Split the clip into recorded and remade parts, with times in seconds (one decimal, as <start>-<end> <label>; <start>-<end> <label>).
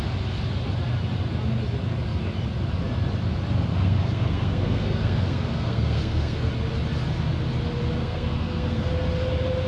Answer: 0.0-3.7 recorded; 3.7-6.5 remade; 6.5-8.0 recorded; 8.0-8.9 remade; 8.9-9.7 recorded